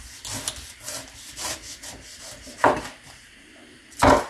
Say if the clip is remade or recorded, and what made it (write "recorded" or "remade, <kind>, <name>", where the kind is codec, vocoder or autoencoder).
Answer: recorded